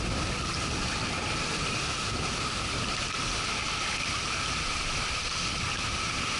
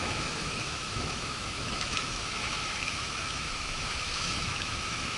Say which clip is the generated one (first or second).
second